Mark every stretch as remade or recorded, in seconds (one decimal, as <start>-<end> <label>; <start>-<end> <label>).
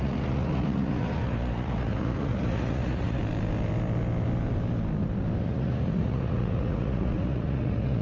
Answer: 0.0-3.2 remade; 3.2-5.4 recorded; 5.4-8.0 remade